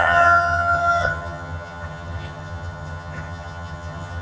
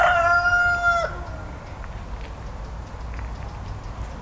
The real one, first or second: second